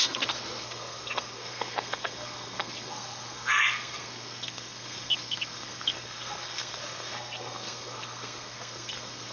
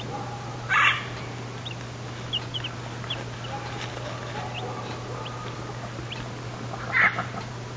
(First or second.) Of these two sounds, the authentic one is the second